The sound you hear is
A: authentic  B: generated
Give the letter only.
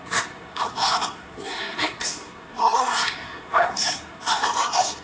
B